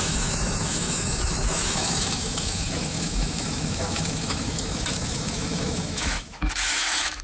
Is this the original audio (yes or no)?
no